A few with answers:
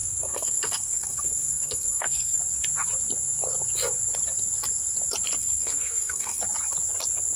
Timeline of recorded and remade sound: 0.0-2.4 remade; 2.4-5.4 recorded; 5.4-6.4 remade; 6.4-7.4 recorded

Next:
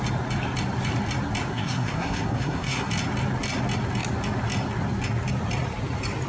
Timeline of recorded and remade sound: 0.0-1.5 recorded; 1.5-2.9 remade; 2.9-6.3 recorded

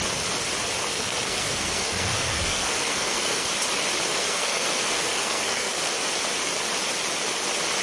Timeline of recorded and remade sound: 0.0-0.9 recorded; 0.9-3.5 remade; 3.5-4.1 recorded; 4.1-5.9 remade; 5.9-7.8 recorded

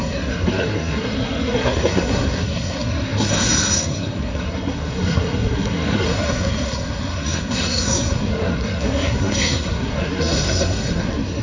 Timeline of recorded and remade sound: 0.0-11.4 remade

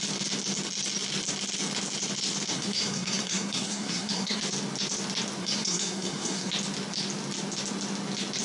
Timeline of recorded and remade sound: 0.0-2.5 recorded; 2.5-4.4 remade; 4.4-5.4 recorded; 5.4-6.5 remade; 6.5-8.4 recorded

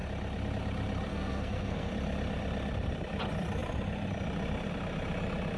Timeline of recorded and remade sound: 0.0-1.1 recorded; 1.1-1.9 remade; 1.9-5.6 recorded

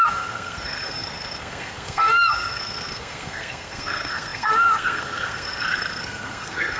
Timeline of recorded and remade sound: 0.0-6.8 remade

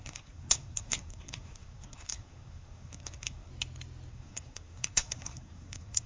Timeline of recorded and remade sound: 0.0-3.5 remade; 3.5-4.1 recorded; 4.1-6.1 remade